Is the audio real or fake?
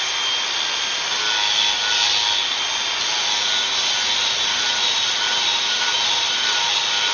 real